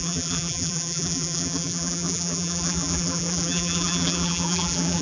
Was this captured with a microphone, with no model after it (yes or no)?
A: no